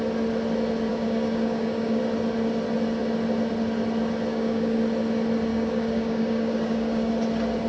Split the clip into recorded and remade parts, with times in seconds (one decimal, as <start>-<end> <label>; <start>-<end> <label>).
0.0-0.9 recorded; 0.9-2.0 remade; 2.0-4.3 recorded; 4.3-4.8 remade; 4.8-5.5 recorded; 5.5-7.1 remade; 7.1-7.7 recorded